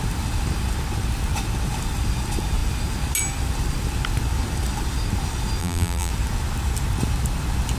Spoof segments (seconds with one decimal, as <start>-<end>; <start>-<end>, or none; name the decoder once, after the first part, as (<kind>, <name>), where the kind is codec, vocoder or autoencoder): 5.6-6.1 (vocoder, BigVGAN v2)